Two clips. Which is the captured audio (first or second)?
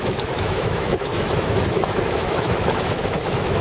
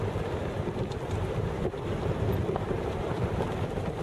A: second